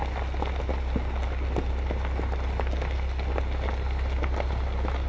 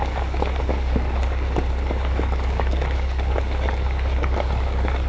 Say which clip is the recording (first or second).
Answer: first